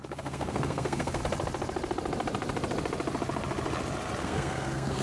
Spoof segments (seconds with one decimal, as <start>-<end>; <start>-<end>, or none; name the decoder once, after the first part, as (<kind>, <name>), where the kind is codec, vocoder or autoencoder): 0.0-1.2 (codec, SNAC); 4.2-5.0